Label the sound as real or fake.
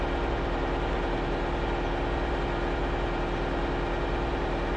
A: real